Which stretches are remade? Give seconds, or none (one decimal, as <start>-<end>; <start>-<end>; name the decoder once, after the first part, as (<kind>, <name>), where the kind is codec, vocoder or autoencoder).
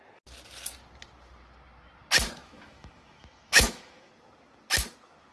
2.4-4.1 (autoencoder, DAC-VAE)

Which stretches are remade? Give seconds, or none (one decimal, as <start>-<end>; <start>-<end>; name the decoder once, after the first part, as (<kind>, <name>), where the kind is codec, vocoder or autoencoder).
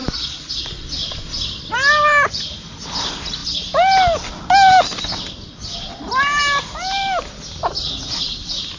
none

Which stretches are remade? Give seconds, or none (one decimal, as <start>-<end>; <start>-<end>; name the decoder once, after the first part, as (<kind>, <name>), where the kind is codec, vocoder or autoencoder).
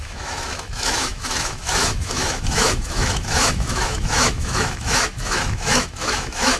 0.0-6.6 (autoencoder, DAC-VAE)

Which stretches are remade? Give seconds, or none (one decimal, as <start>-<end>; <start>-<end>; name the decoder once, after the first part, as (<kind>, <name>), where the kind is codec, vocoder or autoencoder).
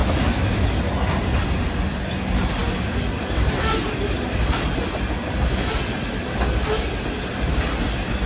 0.0-0.7 (autoencoder, DAC-VAE)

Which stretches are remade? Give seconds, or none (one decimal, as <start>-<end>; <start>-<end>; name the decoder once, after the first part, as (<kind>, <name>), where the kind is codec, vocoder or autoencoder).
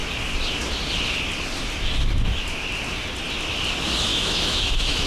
4.1-5.1 (autoencoder, DAC-VAE)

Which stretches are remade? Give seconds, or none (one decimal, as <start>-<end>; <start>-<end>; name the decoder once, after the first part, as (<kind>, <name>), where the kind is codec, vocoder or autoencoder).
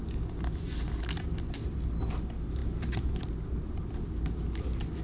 none